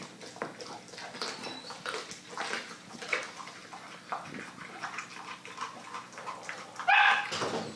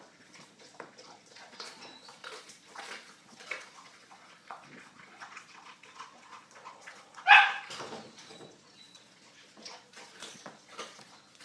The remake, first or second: second